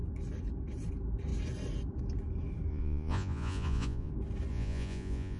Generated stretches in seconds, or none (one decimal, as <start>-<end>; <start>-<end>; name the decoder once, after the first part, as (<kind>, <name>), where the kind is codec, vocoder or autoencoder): 2.7-4.1 (vocoder, Vocos); 4.5-5.4